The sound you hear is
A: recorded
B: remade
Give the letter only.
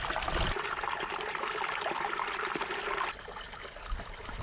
B